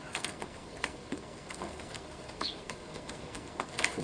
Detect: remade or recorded remade